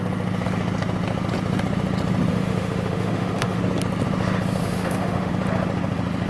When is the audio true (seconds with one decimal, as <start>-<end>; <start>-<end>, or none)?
0.0-2.3; 3.6-4.6; 5.3-6.3